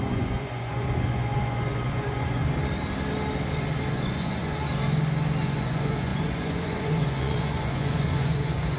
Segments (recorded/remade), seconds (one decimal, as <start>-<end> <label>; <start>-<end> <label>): 0.0-2.4 remade; 2.4-3.9 recorded; 3.9-4.7 remade; 4.7-5.4 recorded; 5.4-8.8 remade

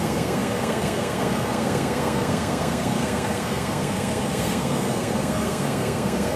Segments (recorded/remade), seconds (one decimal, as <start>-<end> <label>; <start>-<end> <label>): 0.0-6.4 remade

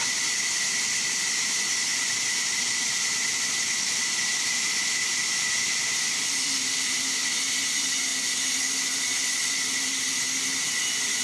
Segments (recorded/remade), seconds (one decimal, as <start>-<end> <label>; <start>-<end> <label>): 0.0-6.9 remade; 6.9-7.6 recorded; 7.6-8.1 remade; 8.1-8.7 recorded; 8.7-11.2 remade

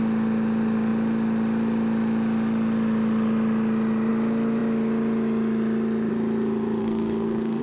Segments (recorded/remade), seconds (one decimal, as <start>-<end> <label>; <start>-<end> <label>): 0.0-6.8 recorded; 6.8-7.6 remade